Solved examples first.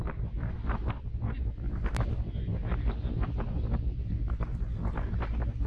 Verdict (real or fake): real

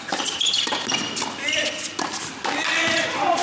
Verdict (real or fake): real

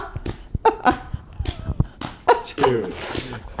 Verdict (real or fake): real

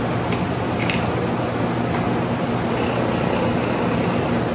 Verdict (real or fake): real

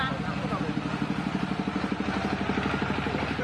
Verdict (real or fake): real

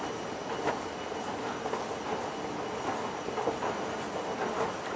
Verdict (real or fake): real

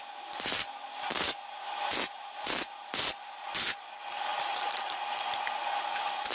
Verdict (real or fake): real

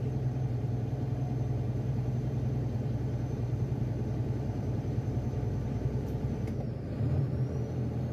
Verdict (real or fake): fake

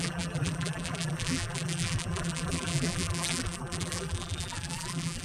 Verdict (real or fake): fake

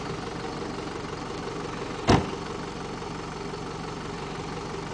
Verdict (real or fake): real